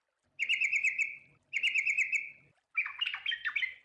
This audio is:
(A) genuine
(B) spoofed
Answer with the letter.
A